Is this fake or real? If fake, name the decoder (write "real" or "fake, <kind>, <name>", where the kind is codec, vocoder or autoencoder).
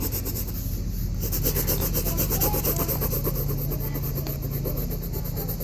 real